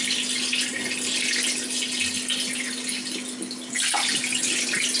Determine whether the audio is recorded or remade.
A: recorded